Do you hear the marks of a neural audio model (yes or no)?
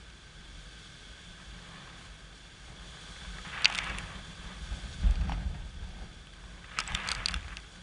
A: no